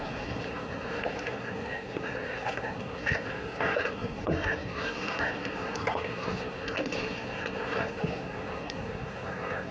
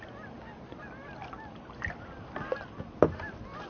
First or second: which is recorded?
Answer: second